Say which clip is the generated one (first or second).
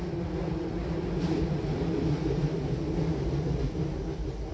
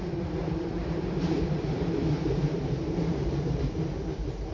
second